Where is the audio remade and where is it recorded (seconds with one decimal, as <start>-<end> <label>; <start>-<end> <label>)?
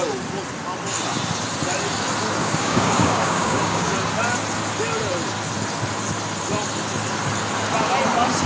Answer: 0.0-2.4 recorded; 2.4-3.9 remade; 3.9-8.5 recorded